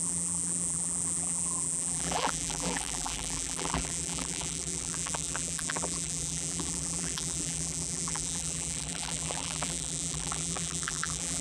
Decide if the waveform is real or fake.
fake